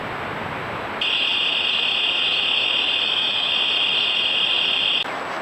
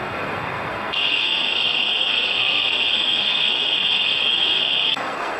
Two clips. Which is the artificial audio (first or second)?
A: second